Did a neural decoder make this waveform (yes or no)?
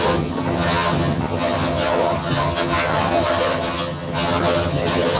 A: yes